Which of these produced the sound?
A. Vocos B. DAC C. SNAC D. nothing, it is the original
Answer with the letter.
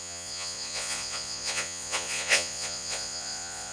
A